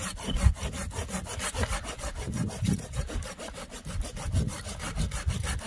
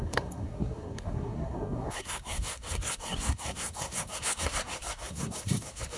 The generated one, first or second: second